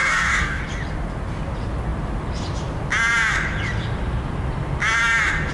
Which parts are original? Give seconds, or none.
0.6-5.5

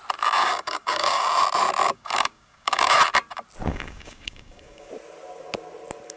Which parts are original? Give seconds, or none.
0.0-0.4; 1.2-1.8; 2.9-3.7; 4.9-6.2

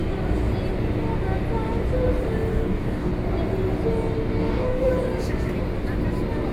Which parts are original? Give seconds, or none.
0.0-2.5; 3.1-4.4; 4.9-6.5